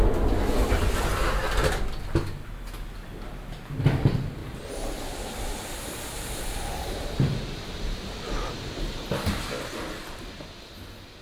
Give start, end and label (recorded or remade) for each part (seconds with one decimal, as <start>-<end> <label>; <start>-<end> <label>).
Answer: 0.0-4.4 recorded; 4.4-9.5 remade; 9.5-11.2 recorded